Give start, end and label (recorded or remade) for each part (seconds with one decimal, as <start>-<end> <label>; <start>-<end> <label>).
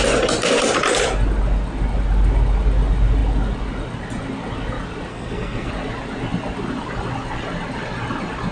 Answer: 0.0-5.1 recorded; 5.1-5.7 remade; 5.7-8.5 recorded